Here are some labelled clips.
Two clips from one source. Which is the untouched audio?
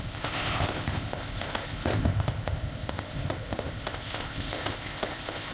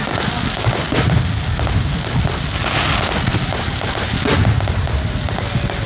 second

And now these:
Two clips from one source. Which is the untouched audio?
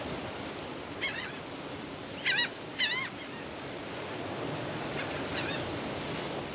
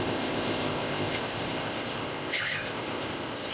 first